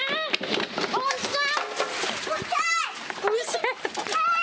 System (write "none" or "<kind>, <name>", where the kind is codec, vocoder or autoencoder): none